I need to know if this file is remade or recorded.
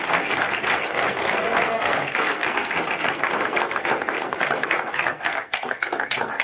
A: remade